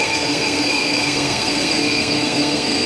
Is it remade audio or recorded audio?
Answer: remade